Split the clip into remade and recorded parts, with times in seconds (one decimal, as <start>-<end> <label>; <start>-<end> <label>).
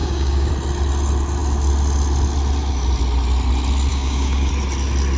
0.0-0.5 remade; 0.5-3.9 recorded; 3.9-4.5 remade; 4.5-5.2 recorded